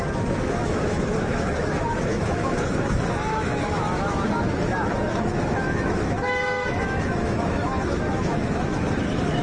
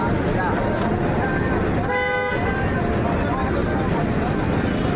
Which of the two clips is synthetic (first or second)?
first